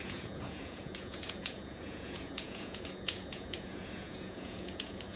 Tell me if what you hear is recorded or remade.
remade